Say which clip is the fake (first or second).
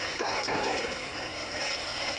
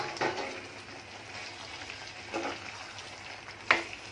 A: first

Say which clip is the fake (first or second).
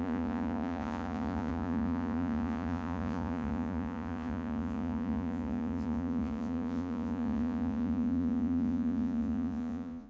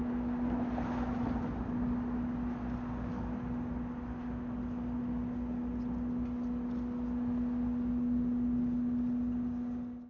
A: first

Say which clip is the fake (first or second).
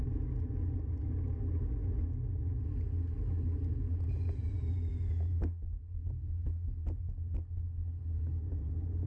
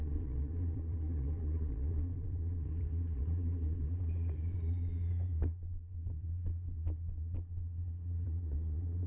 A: second